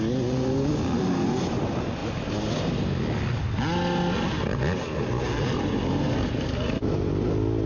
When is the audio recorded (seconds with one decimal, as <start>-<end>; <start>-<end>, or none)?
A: 0.0-7.7